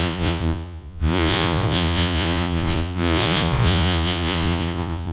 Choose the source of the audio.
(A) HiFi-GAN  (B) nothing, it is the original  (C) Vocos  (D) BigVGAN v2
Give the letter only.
C